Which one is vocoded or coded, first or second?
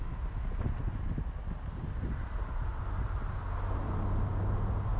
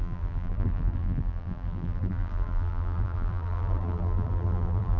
second